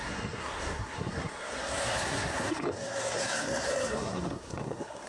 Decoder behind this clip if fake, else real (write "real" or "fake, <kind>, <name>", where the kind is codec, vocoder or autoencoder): fake, codec, SNAC